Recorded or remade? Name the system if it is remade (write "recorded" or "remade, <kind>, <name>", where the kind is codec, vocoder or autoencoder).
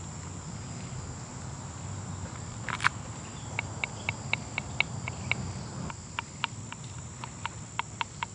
recorded